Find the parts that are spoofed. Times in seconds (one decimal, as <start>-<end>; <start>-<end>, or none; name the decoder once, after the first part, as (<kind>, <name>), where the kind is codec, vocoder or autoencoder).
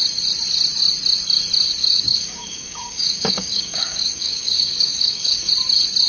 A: 1.8-5.5 (codec, DAC)